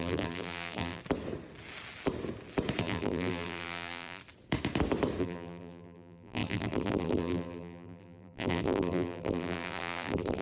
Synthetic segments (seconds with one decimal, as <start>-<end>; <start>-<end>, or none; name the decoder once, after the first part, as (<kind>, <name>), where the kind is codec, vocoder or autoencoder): 0.0-1.0 (vocoder, BigVGAN v2); 2.8-4.2; 5.2-10.4